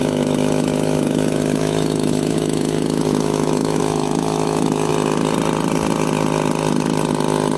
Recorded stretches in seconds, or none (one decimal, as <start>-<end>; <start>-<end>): 4.9-7.6